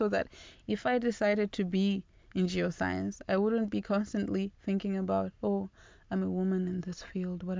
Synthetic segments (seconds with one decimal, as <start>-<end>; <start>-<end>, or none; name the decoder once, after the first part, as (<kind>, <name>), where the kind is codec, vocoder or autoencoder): none